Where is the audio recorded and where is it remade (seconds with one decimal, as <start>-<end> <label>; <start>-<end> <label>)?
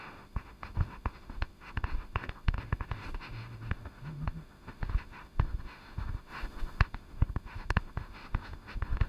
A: 0.0-9.1 remade